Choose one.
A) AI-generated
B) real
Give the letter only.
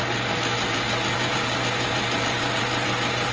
B